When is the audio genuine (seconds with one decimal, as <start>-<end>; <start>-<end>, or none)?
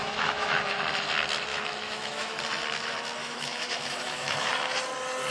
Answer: 0.8-1.5; 2.4-3.2; 4.5-5.3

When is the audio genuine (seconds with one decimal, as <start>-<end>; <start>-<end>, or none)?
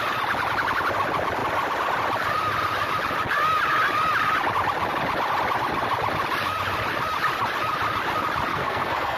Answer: 0.0-8.5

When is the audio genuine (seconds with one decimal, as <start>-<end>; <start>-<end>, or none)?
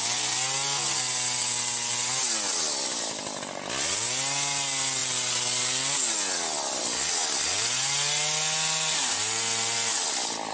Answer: 0.0-10.5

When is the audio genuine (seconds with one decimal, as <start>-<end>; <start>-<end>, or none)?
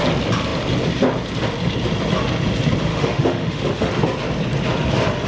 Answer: 0.0-2.9; 3.9-5.3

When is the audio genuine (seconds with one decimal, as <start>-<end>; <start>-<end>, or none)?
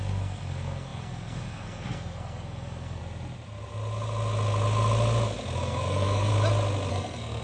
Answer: 3.0-5.6; 6.3-6.9